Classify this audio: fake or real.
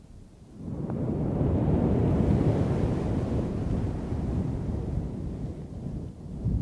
real